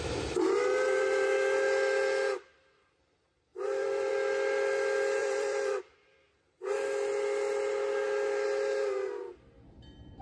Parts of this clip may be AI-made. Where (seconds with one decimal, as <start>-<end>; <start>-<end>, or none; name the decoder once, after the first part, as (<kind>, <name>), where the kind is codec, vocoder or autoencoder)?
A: 3.5-4.1 (vocoder, BigVGAN v2); 5.2-5.8